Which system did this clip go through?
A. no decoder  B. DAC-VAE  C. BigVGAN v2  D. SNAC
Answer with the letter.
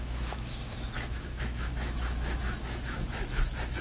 B